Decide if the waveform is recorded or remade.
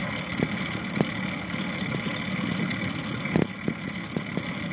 recorded